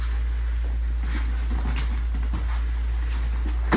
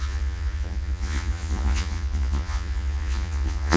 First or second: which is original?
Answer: first